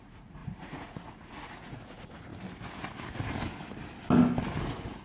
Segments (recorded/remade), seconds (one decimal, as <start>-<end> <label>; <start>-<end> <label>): 0.0-2.3 remade; 2.3-4.6 recorded; 4.6-5.0 remade